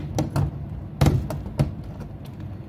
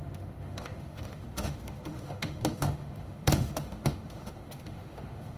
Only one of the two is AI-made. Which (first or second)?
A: second